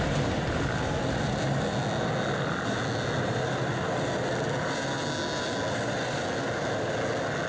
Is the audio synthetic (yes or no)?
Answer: no